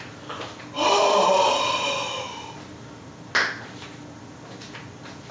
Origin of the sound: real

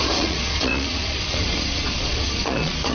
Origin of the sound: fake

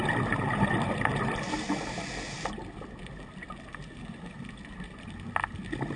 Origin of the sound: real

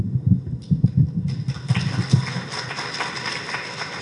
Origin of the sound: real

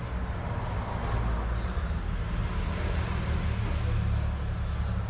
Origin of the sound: real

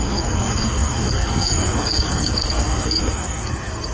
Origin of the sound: fake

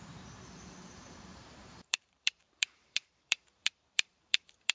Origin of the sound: fake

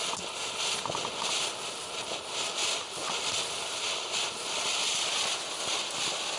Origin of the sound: real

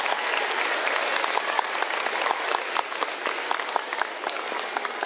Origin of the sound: real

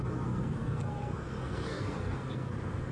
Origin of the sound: fake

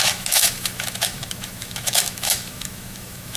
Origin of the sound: fake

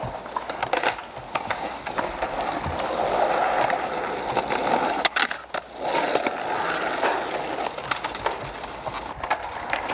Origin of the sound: real